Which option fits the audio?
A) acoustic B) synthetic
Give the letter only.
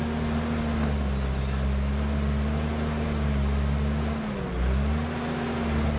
A